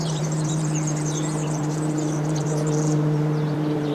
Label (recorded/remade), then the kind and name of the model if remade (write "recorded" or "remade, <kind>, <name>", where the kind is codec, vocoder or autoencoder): remade, vocoder, BigVGAN v2